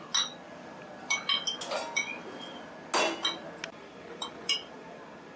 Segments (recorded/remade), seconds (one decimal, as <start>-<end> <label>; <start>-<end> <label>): 0.0-5.4 recorded